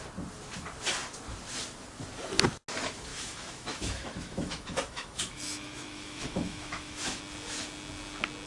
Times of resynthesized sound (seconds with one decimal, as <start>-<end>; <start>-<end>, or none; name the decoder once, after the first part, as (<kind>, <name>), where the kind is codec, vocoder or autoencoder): 3.1-7.2 (autoencoder, DAC-VAE)